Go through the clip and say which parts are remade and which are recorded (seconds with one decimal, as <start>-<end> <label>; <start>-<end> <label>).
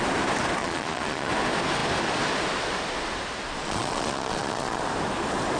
0.0-0.6 recorded; 0.6-1.3 remade; 1.3-3.6 recorded; 3.6-4.8 remade; 4.8-5.6 recorded